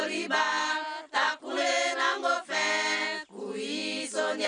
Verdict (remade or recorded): recorded